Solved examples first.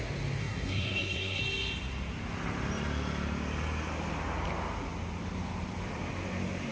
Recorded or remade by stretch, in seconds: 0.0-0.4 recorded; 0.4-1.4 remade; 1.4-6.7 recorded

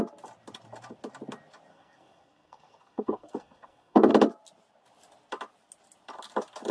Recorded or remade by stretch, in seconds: 0.0-1.7 recorded; 1.7-4.1 remade; 4.1-6.7 recorded

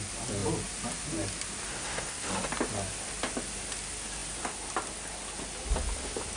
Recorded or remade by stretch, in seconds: 0.0-1.7 recorded; 1.7-2.3 remade; 2.3-6.4 recorded

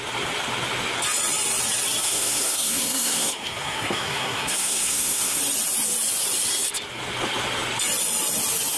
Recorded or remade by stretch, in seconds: 0.0-2.0 recorded; 2.0-5.4 remade; 5.4-8.8 recorded

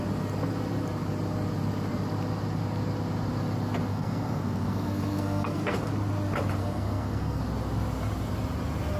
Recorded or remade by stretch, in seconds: 0.0-3.9 recorded; 3.9-5.9 remade; 5.9-6.6 recorded; 6.6-7.4 remade; 7.4-9.0 recorded

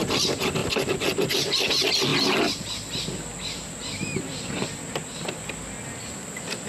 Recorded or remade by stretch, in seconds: 0.0-6.7 recorded

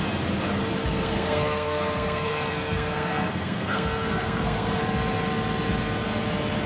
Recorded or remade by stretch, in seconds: 0.0-0.8 recorded; 0.8-4.8 remade; 4.8-6.7 recorded

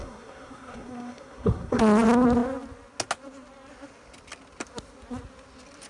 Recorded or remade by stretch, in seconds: 0.0-1.8 remade; 1.8-5.9 recorded